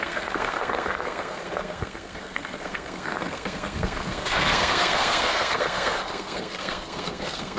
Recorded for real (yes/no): no